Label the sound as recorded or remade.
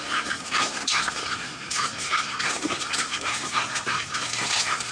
remade